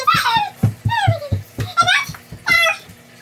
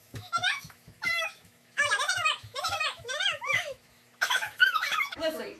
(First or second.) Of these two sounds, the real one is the first